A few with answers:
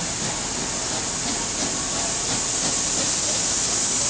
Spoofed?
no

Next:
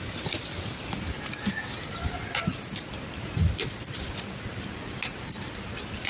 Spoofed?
no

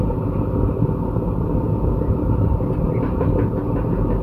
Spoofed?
no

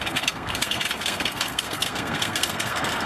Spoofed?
yes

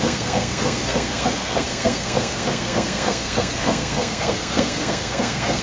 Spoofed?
yes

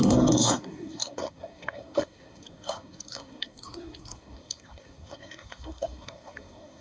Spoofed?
yes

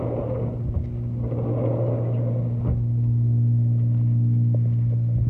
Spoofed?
no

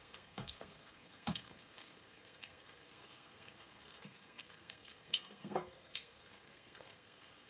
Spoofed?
yes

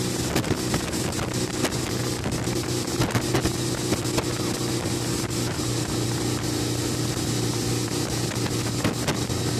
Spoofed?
no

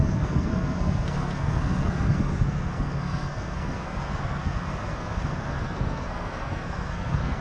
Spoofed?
yes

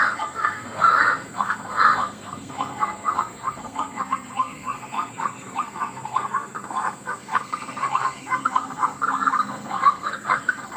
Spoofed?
yes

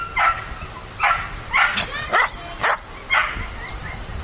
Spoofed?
no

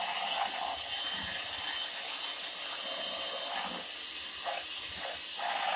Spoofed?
no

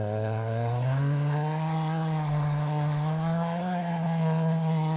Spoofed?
yes